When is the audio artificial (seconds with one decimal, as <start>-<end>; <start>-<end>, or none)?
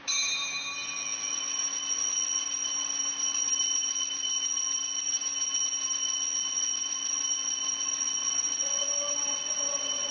8.2-8.9